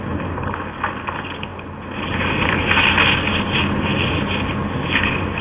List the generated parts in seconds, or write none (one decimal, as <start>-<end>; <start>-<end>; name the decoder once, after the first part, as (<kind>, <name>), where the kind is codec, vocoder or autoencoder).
none

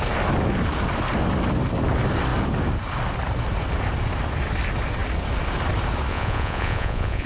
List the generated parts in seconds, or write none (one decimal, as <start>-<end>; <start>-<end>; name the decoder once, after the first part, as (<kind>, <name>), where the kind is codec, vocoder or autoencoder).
6.1-7.3 (vocoder, Vocos)

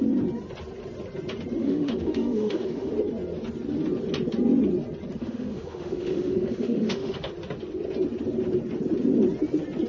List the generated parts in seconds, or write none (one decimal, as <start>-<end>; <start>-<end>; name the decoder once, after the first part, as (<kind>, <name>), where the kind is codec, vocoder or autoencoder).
1.6-2.9 (autoencoder, DAC-VAE); 5.2-7.3

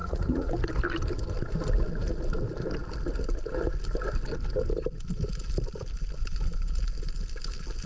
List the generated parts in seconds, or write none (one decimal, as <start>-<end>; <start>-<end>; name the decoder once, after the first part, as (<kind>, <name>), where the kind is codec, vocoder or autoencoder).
0.0-0.5 (vocoder, Vocos)